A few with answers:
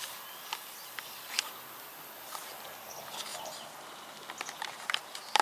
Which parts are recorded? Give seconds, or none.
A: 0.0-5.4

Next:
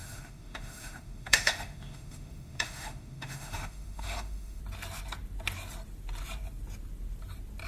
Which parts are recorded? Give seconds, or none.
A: 4.6-7.7

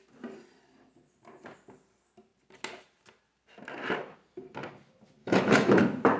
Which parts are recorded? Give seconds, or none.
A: 0.0-5.2; 5.8-6.2

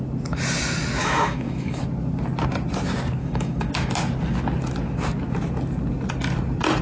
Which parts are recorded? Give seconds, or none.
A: 0.0-1.0; 1.8-3.2; 3.7-6.8

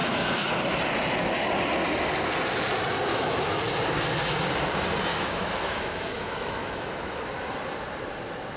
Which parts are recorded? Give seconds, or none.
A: 0.5-3.1; 3.6-5.1; 7.2-8.6

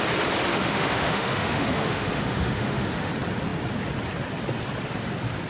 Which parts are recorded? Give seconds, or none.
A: 0.0-0.5; 3.1-5.5

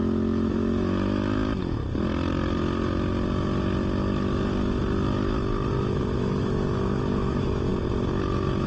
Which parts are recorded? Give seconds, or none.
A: 1.6-5.7; 7.7-8.7

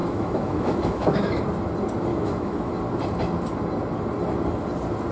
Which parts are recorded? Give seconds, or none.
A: 1.4-2.1; 2.7-5.1